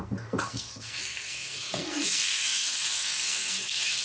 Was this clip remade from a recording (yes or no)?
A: yes